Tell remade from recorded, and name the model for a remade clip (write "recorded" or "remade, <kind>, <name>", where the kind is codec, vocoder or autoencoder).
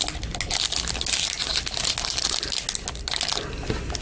recorded